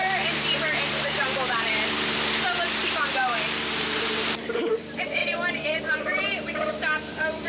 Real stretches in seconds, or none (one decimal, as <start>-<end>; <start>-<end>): 2.8-4.4